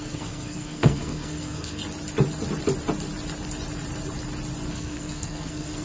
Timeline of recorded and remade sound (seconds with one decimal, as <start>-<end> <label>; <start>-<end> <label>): 0.0-1.8 remade; 1.8-4.7 recorded; 4.7-5.8 remade